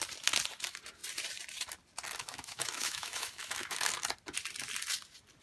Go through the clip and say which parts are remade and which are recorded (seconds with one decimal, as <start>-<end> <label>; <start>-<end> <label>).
0.0-2.2 recorded; 2.2-3.9 remade; 3.9-5.4 recorded